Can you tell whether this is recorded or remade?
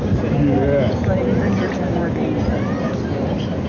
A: recorded